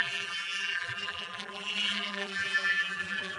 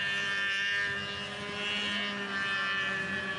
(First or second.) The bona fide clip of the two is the second